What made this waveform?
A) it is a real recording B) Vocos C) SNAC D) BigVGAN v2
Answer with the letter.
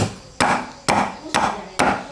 A